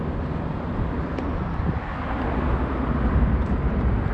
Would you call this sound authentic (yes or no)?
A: yes